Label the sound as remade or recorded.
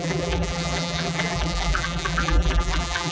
remade